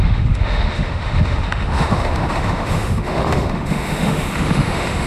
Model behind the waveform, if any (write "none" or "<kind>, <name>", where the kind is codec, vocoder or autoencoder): autoencoder, DAC-VAE